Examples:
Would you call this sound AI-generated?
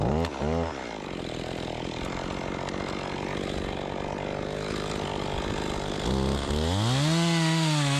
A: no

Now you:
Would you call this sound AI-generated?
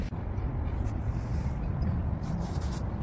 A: no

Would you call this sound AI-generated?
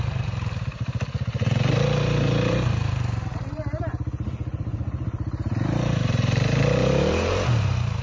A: yes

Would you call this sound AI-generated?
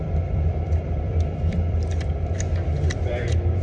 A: yes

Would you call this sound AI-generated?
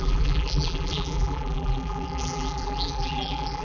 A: yes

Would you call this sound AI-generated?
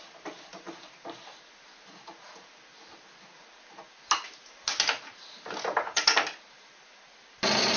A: no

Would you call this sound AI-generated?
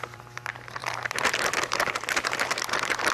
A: yes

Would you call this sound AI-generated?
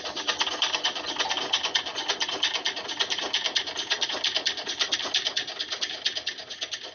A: yes